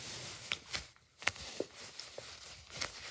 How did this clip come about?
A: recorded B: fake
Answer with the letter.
A